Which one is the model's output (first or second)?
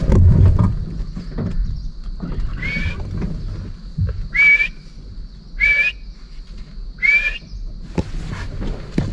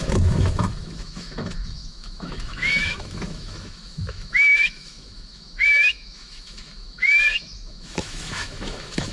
second